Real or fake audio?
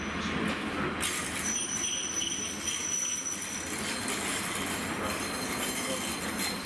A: real